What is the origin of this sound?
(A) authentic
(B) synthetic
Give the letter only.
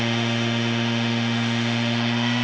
B